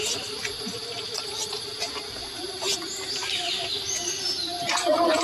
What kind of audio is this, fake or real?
real